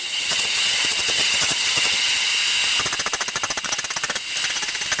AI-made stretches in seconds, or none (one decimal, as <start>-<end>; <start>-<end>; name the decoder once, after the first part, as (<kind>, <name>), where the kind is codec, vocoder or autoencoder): 0.0-2.3 (vocoder, HiFi-GAN)